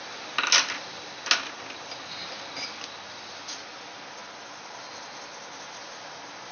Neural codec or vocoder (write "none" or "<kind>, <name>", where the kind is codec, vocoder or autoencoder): none